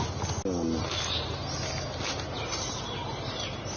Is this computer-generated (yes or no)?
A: no